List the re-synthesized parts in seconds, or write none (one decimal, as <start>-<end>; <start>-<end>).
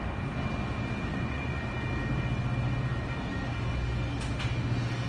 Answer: 1.1-1.7